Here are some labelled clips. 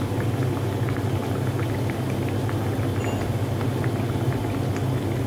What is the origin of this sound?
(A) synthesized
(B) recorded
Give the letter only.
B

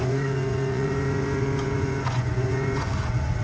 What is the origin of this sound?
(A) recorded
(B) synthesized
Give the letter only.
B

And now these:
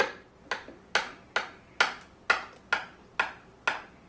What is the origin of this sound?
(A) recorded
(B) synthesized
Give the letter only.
A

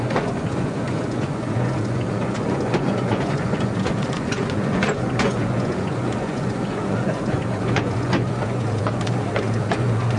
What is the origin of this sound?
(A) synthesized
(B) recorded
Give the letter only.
A